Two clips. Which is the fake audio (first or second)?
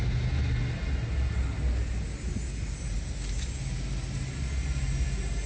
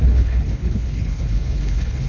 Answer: second